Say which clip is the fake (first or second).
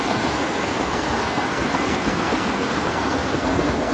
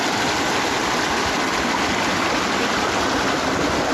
first